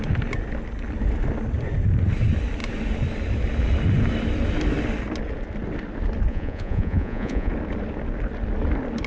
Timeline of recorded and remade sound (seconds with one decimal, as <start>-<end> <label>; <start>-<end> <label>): 0.0-6.3 recorded; 6.3-7.5 remade; 7.5-9.1 recorded